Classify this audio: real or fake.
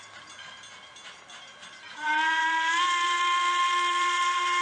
fake